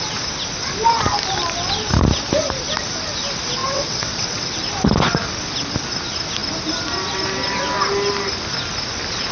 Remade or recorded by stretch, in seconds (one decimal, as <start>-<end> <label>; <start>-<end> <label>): 0.0-3.6 recorded; 3.6-4.6 remade; 4.6-9.3 recorded